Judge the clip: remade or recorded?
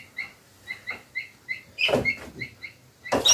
recorded